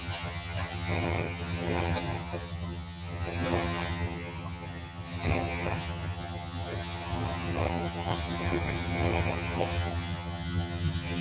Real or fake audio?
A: fake